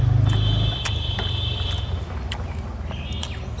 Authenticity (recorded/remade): recorded